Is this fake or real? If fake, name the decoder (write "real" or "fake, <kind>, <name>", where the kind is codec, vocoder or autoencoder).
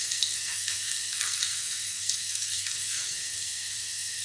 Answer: fake, codec, SNAC